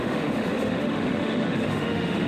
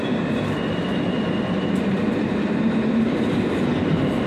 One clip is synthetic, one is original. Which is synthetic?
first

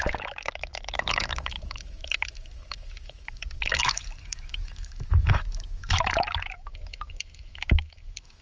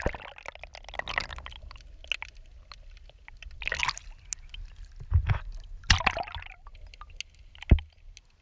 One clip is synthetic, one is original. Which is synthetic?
first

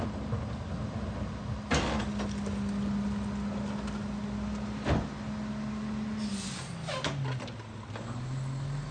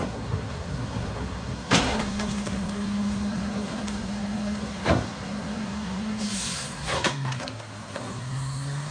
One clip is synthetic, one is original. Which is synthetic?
second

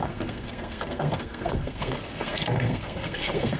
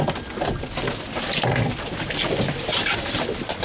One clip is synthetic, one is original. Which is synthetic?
first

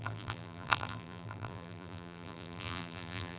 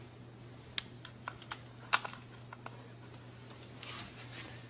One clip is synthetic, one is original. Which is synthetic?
first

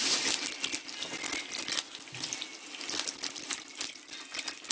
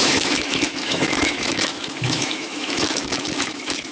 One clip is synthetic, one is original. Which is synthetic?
second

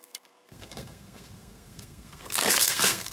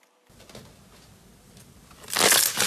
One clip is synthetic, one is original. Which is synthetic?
first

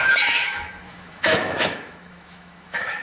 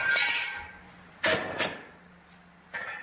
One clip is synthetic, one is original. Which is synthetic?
first